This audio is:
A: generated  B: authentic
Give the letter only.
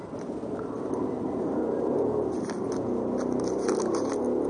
B